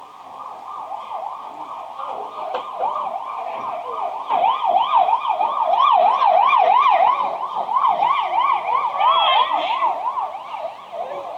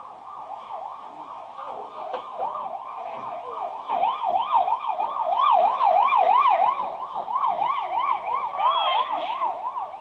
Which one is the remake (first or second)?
second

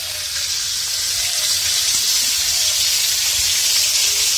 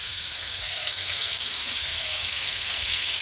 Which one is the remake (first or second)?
second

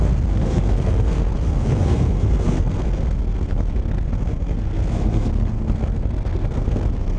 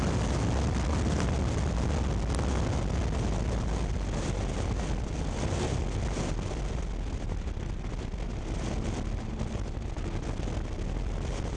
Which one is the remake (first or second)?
first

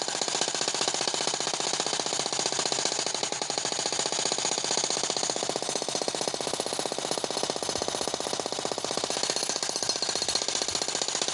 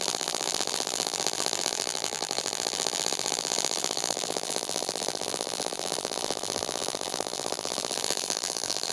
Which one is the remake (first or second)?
second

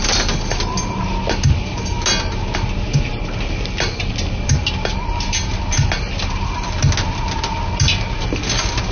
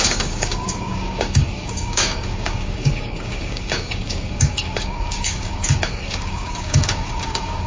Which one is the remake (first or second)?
second